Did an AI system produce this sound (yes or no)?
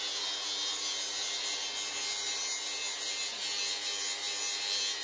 no